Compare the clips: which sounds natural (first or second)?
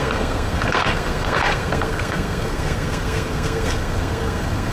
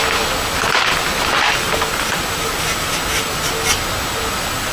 second